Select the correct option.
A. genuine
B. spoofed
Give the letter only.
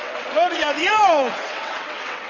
B